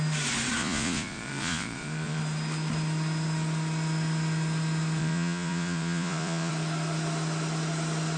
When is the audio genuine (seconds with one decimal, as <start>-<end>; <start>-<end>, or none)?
0.0-0.6; 2.2-5.0; 6.5-8.2